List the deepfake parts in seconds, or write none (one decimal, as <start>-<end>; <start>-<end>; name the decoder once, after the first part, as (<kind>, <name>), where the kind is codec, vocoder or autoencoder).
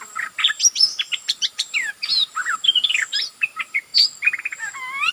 0.0-2.1 (vocoder, BigVGAN v2); 3.3-3.9